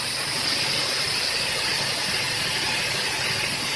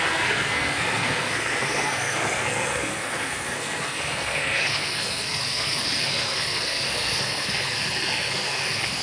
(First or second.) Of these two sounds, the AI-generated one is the second